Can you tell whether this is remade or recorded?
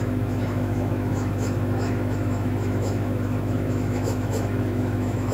remade